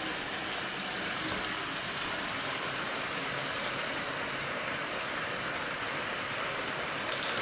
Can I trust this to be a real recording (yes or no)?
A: no